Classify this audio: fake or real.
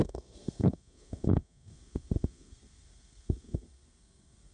fake